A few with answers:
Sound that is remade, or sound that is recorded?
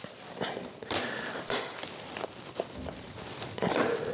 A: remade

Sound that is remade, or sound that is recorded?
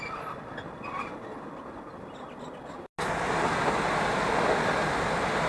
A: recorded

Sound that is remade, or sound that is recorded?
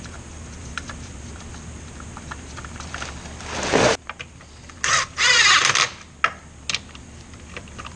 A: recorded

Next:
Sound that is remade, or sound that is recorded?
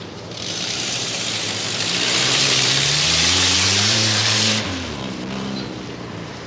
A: remade